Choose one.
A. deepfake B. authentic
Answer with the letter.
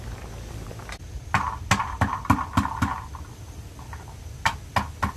B